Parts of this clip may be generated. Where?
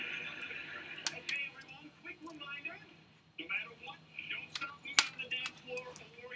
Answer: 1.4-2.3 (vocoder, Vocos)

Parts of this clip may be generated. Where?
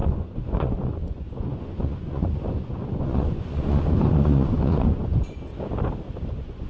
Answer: 0.0-5.5 (vocoder, Vocos); 6.3-6.7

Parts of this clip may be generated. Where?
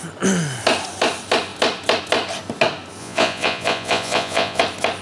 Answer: 3.0-4.6 (vocoder, Vocos)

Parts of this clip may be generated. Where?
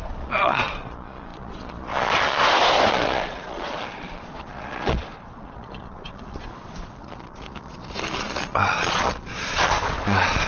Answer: 0.0-2.4 (vocoder, Vocos); 2.9-10.5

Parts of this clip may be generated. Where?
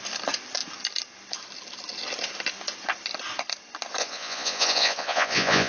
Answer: 4.0-5.7 (vocoder, Vocos)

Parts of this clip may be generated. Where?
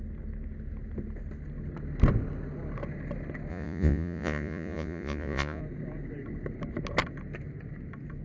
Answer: 3.5-5.6 (vocoder, Vocos)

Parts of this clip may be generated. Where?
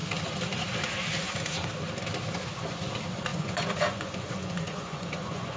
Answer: 3.3-5.6 (vocoder, Vocos)